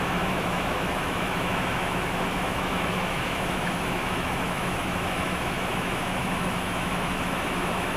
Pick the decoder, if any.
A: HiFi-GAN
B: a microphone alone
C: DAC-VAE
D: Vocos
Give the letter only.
C